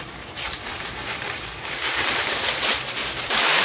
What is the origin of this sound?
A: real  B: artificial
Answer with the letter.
B